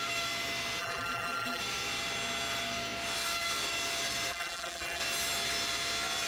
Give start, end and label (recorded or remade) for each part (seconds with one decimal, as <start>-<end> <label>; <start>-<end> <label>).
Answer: 0.0-0.8 recorded; 0.8-1.6 remade; 1.6-4.3 recorded; 4.3-5.0 remade; 5.0-6.3 recorded

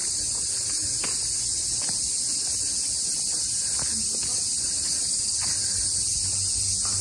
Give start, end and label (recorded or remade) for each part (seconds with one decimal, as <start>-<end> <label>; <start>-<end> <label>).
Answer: 0.0-7.0 recorded

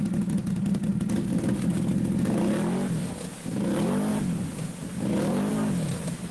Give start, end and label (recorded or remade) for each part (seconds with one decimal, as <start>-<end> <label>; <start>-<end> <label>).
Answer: 0.0-4.1 recorded; 4.1-5.5 remade; 5.5-6.3 recorded

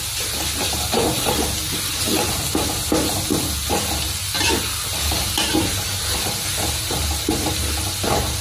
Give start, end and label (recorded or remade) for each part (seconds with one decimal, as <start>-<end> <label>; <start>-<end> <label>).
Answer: 0.0-8.4 recorded

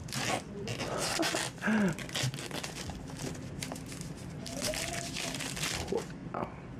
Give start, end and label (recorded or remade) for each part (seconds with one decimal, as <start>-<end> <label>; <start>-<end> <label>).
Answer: 0.0-6.8 remade

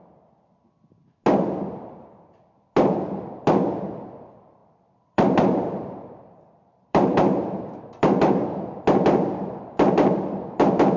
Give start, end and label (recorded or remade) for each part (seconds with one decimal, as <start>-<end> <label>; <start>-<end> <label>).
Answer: 0.0-4.6 recorded; 4.6-8.8 remade; 8.8-11.0 recorded

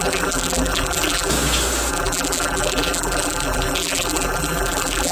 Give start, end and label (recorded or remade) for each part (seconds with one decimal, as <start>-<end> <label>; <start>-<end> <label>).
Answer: 0.0-1.3 remade; 1.3-1.9 recorded; 1.9-5.1 remade

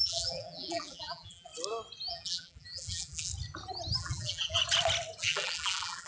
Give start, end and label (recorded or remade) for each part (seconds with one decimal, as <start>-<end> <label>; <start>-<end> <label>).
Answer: 0.0-1.5 remade; 1.5-2.1 recorded; 2.1-3.3 remade; 3.3-4.0 recorded; 4.0-4.6 remade; 4.6-5.2 recorded; 5.2-6.1 remade